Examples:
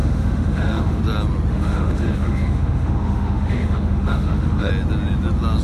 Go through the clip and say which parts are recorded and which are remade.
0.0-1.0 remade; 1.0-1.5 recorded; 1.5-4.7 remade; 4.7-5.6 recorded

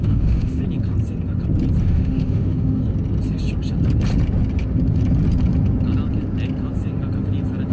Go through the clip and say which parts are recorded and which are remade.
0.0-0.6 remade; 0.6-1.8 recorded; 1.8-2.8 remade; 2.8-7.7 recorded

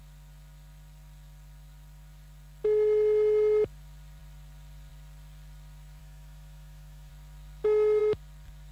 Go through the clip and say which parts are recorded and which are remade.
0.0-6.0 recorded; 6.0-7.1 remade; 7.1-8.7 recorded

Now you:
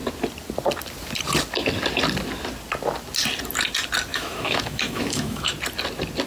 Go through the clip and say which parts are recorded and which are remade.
0.0-4.1 recorded; 4.1-5.5 remade; 5.5-6.3 recorded